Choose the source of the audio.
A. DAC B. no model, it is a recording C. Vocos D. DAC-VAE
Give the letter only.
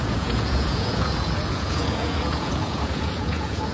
C